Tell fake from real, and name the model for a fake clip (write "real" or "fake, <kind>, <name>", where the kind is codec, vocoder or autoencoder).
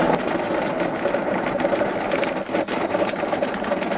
real